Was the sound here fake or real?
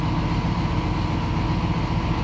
real